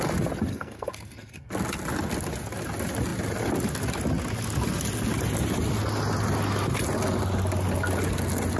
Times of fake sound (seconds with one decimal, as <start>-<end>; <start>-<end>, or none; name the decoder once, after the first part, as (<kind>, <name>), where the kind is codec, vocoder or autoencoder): 0.5-1.5 (codec, SNAC)